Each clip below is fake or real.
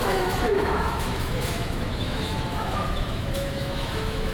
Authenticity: fake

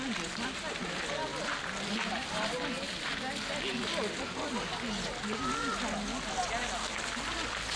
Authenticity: real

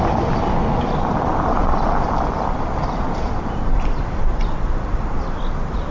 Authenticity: real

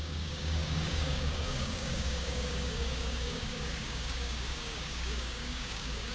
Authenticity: fake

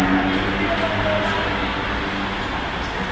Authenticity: real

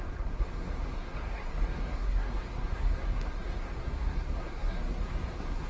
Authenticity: fake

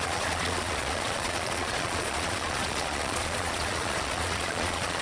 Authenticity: fake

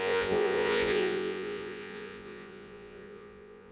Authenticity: fake